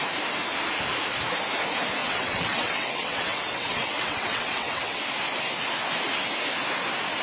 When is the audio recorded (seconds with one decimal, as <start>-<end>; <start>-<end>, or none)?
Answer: 0.0-2.0; 5.0-7.2

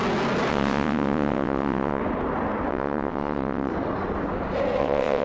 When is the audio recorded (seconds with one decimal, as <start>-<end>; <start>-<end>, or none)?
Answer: 0.0-0.5; 2.0-2.7; 3.7-4.8

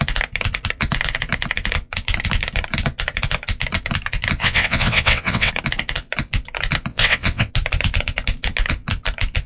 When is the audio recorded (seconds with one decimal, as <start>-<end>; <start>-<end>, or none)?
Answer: 0.0-4.4; 5.5-6.9; 7.5-9.5

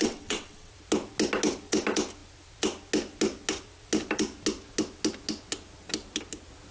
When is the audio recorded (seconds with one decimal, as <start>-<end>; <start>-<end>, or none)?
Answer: 0.7-6.7

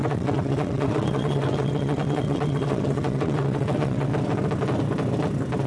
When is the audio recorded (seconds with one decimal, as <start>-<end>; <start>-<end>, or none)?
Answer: 4.1-5.7